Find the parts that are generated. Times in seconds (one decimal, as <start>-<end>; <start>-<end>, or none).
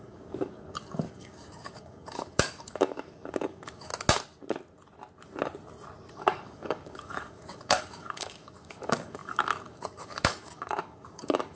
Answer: 0.0-3.9; 6.1-11.6